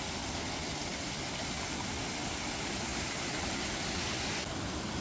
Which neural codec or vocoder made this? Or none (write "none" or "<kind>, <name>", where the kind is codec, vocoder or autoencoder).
none